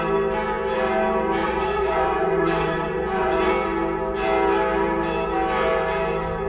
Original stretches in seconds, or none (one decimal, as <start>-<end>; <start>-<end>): 0.0-1.4; 3.5-6.5